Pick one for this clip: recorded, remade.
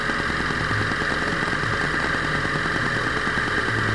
recorded